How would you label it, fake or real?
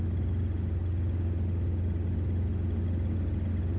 real